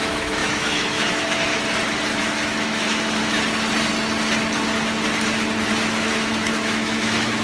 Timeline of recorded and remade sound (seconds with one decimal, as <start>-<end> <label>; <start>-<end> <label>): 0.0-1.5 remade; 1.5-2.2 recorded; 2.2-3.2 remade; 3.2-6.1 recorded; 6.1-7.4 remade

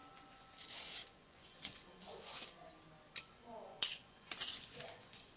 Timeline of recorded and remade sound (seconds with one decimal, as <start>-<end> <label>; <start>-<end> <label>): 0.0-2.6 remade; 2.6-3.2 recorded; 3.2-5.4 remade

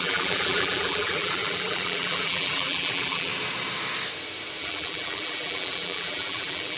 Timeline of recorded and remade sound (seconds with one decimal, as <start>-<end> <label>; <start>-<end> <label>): 0.0-3.3 remade; 3.3-4.6 recorded; 4.6-6.8 remade

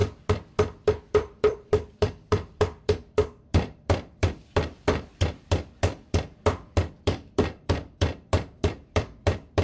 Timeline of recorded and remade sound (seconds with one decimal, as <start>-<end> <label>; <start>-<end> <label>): 0.0-1.1 recorded; 1.1-4.5 remade; 4.5-5.3 recorded; 5.3-9.6 remade

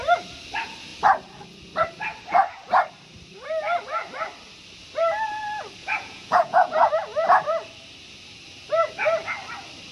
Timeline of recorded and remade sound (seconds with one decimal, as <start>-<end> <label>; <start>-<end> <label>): 0.0-5.8 recorded; 5.8-6.9 remade; 6.9-9.9 recorded